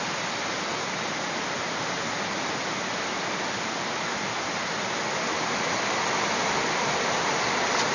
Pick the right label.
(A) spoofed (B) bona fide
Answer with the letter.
B